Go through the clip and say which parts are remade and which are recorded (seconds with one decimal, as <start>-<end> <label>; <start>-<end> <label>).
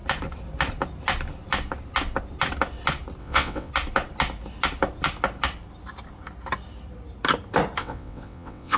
0.0-3.2 recorded; 3.2-3.7 remade; 3.7-7.8 recorded; 7.8-8.8 remade